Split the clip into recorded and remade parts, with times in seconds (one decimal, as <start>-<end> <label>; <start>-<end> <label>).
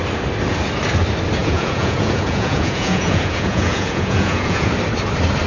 0.0-1.4 recorded; 1.4-4.7 remade; 4.7-5.5 recorded